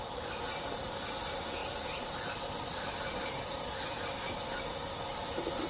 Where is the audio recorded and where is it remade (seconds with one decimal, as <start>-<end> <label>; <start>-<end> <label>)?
0.0-1.6 recorded; 1.6-4.6 remade; 4.6-5.7 recorded